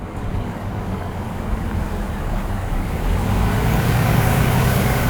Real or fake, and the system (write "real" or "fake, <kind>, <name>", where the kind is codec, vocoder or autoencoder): fake, codec, DAC